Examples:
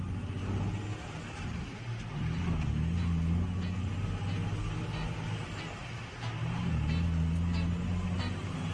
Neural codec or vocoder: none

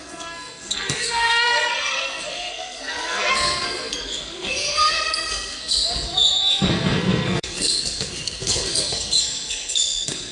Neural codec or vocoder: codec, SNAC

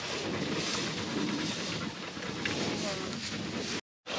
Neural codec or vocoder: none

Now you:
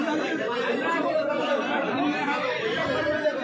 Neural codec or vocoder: vocoder, BigVGAN v2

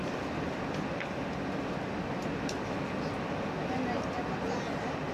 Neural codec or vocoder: none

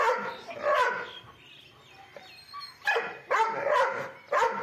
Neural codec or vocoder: none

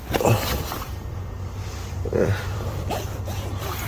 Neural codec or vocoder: vocoder, BigVGAN v2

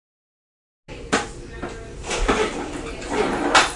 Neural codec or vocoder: none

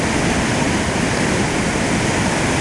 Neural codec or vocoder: none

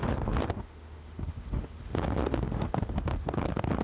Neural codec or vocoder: autoencoder, DAC-VAE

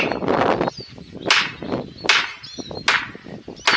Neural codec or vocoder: none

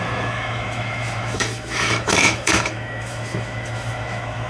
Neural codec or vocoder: autoencoder, DAC-VAE